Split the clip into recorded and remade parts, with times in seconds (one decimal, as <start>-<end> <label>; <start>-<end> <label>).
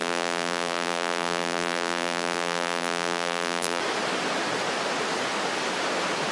0.0-3.8 remade; 3.8-6.3 recorded